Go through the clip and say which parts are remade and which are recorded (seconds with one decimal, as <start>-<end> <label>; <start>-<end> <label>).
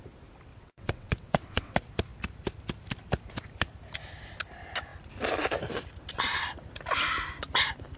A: 0.0-0.5 recorded; 0.5-1.7 remade; 1.7-8.0 recorded